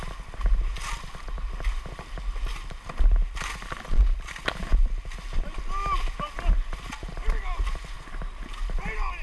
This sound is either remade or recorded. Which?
recorded